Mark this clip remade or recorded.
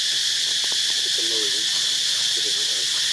recorded